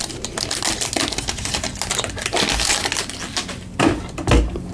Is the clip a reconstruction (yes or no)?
no